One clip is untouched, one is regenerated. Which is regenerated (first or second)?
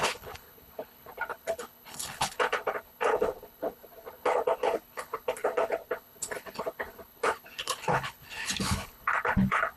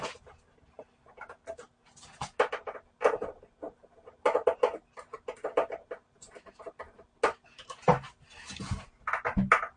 first